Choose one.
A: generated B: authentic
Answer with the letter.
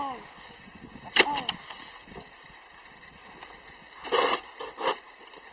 B